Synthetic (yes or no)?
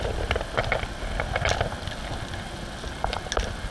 no